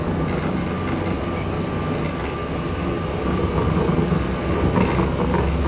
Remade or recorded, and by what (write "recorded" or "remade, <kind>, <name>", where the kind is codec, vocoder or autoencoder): recorded